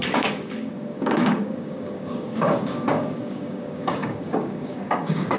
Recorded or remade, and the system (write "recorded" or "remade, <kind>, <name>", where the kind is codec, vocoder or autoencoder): remade, codec, DAC